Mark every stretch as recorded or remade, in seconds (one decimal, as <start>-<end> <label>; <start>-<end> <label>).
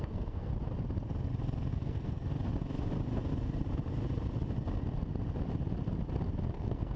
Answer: 0.0-0.5 remade; 0.5-1.7 recorded; 1.7-2.3 remade; 2.3-6.5 recorded; 6.5-7.0 remade